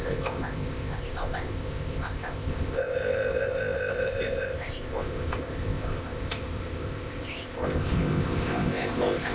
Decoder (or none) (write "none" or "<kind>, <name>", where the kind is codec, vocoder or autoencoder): codec, ZipCodec